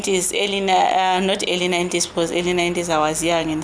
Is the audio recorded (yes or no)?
yes